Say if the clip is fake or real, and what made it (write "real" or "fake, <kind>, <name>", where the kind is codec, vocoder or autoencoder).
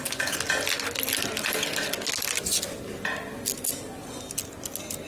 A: real